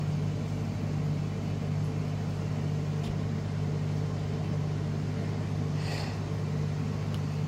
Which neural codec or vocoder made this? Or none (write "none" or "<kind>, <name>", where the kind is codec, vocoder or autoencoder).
none